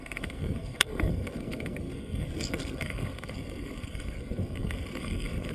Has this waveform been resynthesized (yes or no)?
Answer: yes